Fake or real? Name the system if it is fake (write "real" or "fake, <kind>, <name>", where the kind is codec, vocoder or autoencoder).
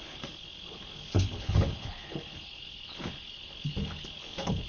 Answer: fake, codec, HILCodec